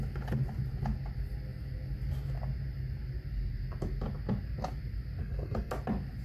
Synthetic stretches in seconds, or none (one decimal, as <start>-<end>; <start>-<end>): 5.2-5.7